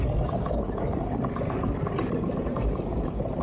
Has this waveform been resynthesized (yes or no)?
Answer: yes